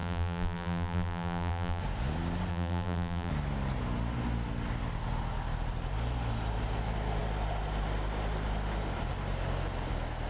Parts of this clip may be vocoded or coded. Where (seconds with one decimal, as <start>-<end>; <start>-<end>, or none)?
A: 0.0-1.8; 2.5-3.3